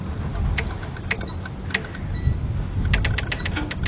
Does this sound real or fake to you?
real